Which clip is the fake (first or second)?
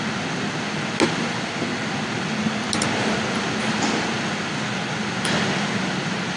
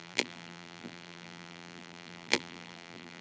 second